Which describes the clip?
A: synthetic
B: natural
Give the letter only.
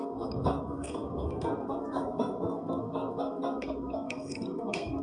A